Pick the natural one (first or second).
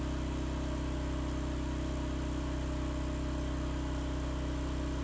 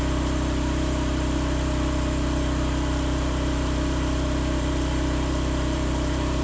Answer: first